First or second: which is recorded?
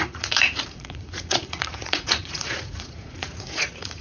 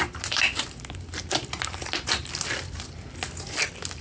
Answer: second